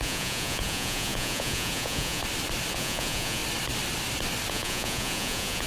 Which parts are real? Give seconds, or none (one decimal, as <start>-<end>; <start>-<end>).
2.2-2.7; 3.4-4.5

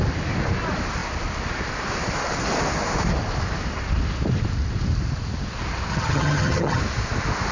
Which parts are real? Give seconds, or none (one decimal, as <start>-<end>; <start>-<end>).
0.0-5.9; 6.8-7.5

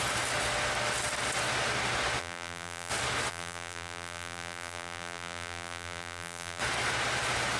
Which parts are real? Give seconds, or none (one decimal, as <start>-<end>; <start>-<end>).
0.0-2.2; 2.9-3.3; 6.6-7.6

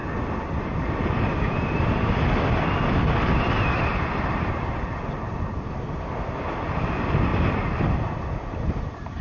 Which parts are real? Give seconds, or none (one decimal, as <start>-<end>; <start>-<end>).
0.0-7.3; 8.3-9.2

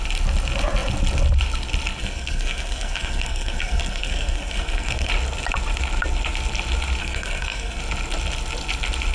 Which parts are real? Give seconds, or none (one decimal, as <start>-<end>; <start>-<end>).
0.0-2.0; 5.1-7.0; 7.8-9.1

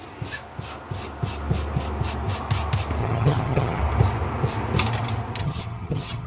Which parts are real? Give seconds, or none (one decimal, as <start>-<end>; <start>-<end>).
0.0-3.0; 3.8-5.4